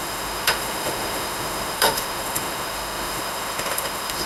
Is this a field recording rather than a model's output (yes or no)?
no